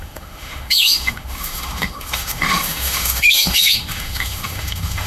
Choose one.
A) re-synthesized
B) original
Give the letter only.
A